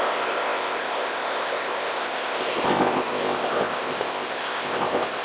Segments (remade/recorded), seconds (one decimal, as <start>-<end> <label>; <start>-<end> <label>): 0.0-5.2 remade